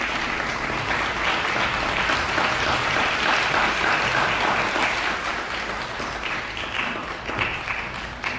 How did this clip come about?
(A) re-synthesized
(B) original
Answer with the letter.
B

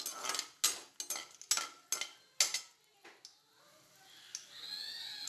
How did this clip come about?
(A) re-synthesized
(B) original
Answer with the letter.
B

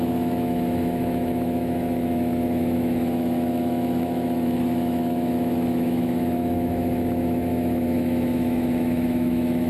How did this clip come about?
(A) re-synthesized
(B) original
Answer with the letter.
A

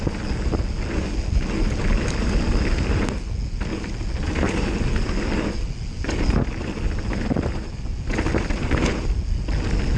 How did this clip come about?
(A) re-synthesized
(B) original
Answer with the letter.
B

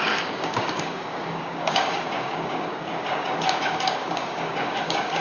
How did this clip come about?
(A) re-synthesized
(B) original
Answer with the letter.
A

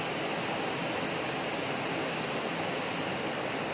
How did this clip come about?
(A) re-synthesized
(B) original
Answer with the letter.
B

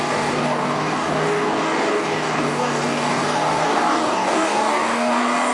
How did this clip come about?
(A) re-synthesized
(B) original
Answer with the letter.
A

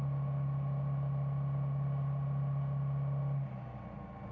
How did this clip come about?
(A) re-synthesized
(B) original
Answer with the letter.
B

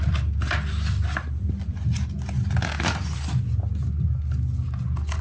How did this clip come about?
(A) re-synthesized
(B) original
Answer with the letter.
B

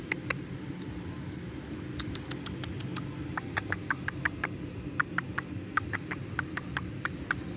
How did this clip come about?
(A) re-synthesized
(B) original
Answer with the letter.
B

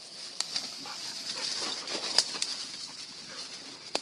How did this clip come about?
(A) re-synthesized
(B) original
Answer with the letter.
B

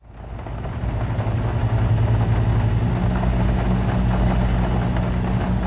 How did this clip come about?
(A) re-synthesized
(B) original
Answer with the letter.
B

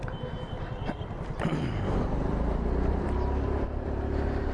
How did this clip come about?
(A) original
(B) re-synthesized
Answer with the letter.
B